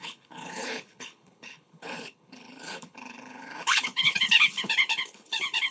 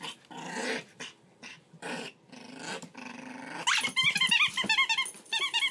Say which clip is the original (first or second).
second